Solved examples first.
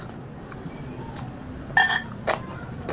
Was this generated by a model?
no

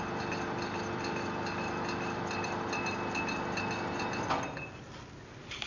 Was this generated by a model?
no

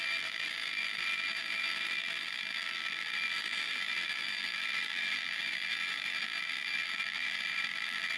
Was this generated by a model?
yes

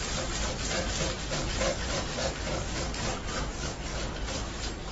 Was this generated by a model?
yes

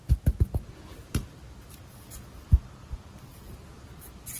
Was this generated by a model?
no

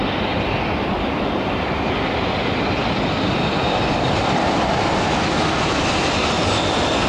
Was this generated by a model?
no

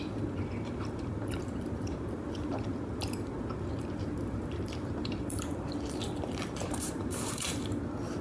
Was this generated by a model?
yes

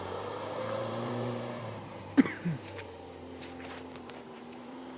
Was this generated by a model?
yes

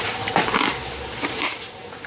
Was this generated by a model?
yes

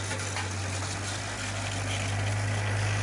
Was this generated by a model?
no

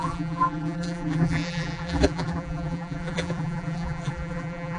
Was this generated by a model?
yes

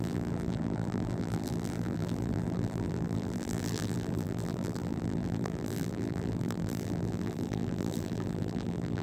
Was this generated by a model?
yes